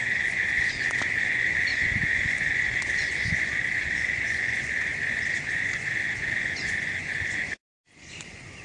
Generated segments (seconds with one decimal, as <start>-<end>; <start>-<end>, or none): 0.0-8.6